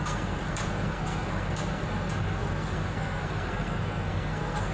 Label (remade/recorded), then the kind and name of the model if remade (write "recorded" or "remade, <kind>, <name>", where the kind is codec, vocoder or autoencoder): remade, codec, SNAC